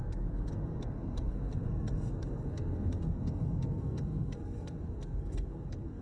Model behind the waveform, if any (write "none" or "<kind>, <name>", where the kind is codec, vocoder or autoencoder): codec, SNAC